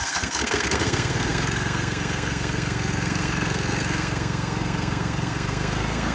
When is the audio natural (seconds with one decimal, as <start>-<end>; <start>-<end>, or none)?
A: none